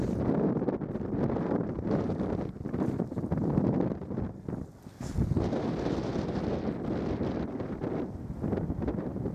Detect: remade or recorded recorded